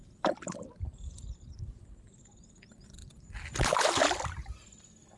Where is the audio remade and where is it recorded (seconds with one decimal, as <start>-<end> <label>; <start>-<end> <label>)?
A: 0.0-5.2 recorded